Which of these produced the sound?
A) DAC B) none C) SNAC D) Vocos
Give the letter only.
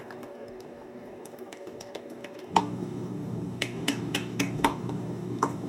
A